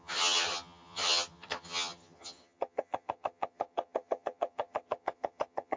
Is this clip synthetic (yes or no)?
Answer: yes